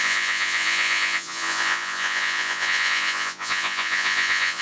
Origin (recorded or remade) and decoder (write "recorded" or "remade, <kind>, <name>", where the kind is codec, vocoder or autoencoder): remade, vocoder, Vocos